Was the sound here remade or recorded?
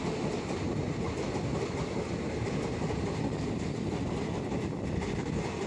recorded